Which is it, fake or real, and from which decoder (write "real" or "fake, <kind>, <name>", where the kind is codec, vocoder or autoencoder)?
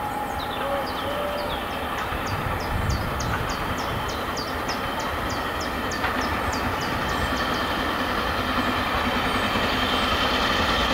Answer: real